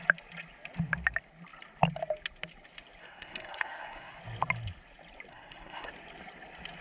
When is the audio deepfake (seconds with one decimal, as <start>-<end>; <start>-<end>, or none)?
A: 3.0-4.2; 5.3-5.9